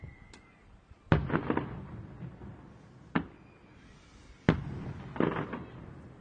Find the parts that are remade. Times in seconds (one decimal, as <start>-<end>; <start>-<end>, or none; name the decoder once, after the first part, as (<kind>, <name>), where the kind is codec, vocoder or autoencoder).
none